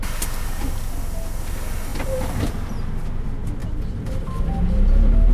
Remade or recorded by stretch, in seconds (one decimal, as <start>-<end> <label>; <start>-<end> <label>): 0.0-5.3 recorded

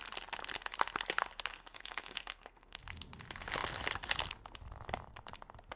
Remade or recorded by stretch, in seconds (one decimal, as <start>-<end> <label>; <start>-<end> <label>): 0.0-1.5 recorded; 1.5-2.8 remade; 2.8-5.8 recorded